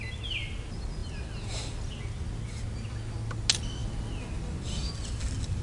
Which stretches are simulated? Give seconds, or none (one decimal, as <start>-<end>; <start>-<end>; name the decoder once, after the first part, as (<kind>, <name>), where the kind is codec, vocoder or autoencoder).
none